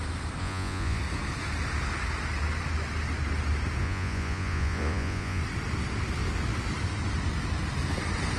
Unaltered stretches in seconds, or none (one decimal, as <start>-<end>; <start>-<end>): 0.0-0.4; 1.0-3.8; 5.4-8.4